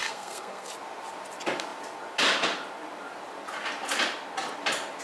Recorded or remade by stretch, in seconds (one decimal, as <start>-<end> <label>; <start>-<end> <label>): 0.0-0.7 remade; 0.7-5.0 recorded